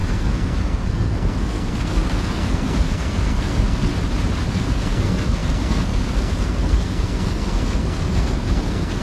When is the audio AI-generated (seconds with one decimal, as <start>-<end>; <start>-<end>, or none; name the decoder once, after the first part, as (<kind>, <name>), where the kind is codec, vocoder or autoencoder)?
0.0-3.9 (codec, SNAC); 4.5-9.0